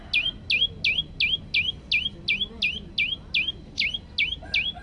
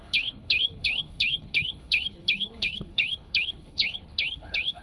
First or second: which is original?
first